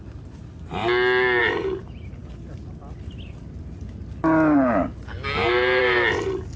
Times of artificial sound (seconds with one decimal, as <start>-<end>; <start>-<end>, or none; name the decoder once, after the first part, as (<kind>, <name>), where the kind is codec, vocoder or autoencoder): none